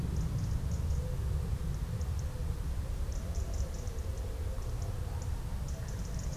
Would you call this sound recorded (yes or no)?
yes